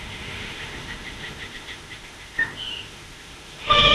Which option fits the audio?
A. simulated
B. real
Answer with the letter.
A